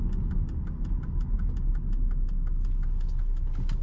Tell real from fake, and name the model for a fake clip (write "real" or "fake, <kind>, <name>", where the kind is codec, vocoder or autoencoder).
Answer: real